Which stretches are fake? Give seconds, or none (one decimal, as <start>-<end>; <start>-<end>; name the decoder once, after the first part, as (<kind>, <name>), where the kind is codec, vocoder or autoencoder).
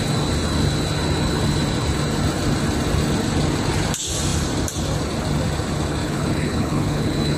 6.0-7.4 (codec, HILCodec)